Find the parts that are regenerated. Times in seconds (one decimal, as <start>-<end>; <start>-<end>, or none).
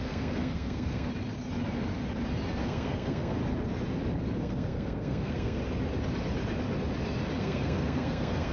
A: 0.0-1.1; 2.6-3.4; 4.4-5.6; 7.4-8.5